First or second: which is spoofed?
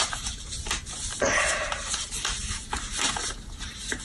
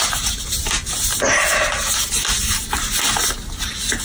first